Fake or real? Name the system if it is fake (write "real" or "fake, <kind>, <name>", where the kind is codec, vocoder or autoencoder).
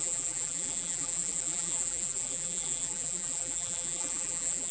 fake, vocoder, BigVGAN v2